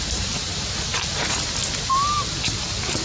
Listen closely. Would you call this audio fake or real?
real